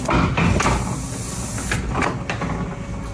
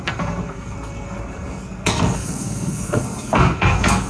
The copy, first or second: second